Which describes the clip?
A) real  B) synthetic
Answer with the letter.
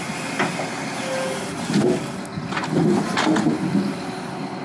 A